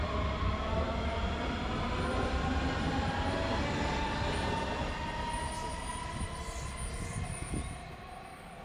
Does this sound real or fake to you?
real